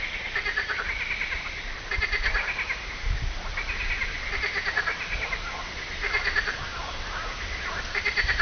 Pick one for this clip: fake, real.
real